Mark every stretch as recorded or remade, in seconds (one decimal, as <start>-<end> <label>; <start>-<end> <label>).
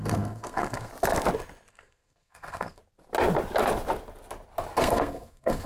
0.0-0.9 remade; 0.9-1.7 recorded; 1.7-2.8 remade; 2.8-4.8 recorded; 4.8-5.7 remade